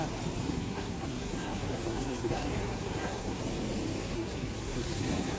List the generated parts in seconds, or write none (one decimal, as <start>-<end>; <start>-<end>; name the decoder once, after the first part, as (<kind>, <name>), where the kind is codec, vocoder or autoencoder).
0.4-3.4 (codec, SNAC); 4.0-5.4